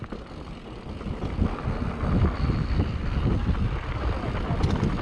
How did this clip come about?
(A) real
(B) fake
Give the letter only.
A